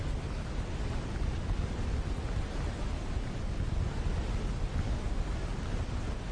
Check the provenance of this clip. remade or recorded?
recorded